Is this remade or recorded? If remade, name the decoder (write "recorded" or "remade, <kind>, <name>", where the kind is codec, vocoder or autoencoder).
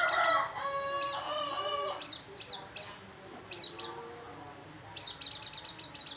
recorded